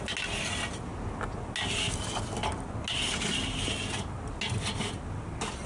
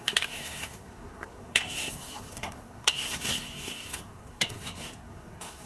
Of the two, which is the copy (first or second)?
second